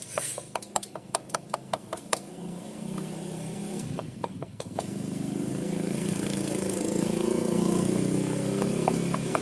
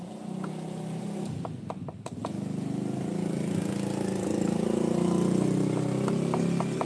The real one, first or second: second